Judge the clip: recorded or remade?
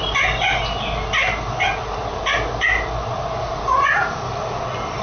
recorded